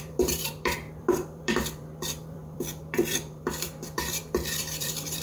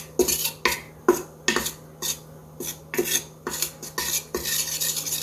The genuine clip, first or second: second